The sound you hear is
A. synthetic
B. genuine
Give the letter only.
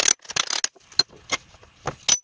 B